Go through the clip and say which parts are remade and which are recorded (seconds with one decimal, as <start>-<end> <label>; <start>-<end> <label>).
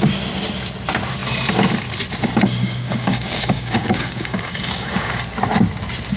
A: 0.0-2.6 recorded; 2.6-5.2 remade; 5.2-6.2 recorded